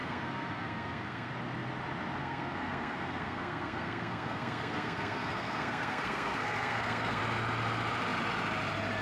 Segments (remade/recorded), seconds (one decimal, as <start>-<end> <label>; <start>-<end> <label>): 0.0-1.3 remade; 1.3-2.2 recorded; 2.2-7.2 remade; 7.2-9.0 recorded